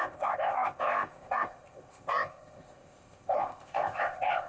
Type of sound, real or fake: fake